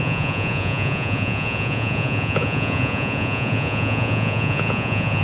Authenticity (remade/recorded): remade